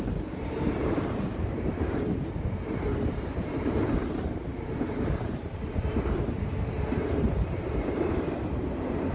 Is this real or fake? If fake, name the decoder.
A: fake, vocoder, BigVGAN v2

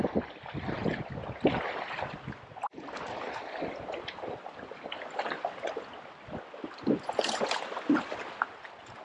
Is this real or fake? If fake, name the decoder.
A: real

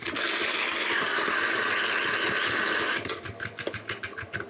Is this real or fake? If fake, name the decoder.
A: real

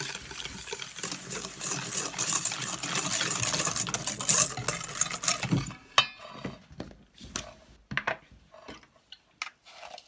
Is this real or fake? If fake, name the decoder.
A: real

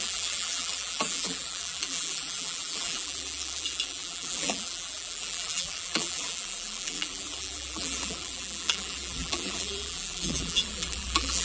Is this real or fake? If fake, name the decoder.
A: fake, vocoder, BigVGAN v2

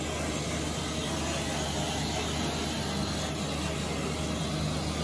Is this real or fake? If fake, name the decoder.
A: real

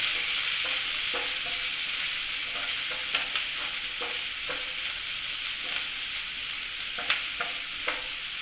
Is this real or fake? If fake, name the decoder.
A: real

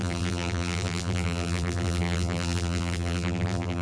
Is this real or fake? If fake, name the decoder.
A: fake, vocoder, BigVGAN v2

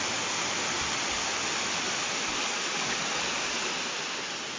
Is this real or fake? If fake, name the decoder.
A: real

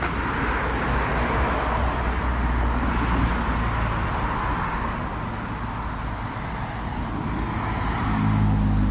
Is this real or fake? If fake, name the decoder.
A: real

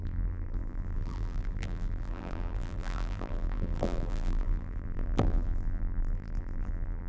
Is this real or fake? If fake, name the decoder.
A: fake, vocoder, BigVGAN v2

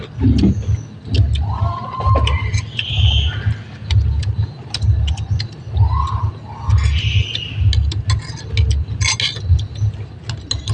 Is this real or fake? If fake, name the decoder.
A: real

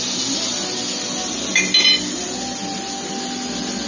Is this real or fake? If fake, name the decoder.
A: real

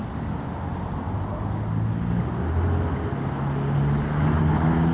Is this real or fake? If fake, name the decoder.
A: real